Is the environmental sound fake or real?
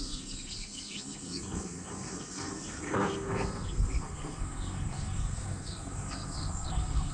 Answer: fake